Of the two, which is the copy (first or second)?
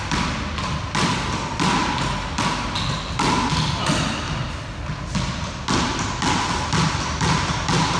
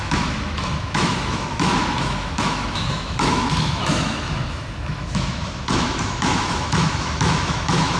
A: second